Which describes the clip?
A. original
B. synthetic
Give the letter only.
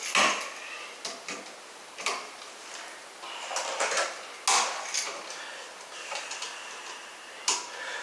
A